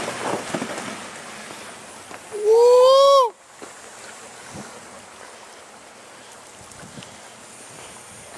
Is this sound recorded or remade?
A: recorded